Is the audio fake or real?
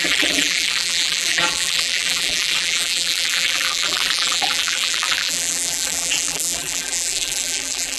fake